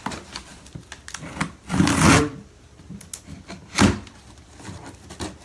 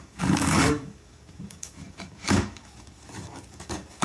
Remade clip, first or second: second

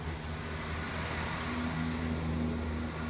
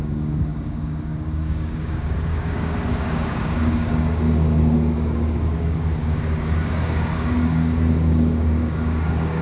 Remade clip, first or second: second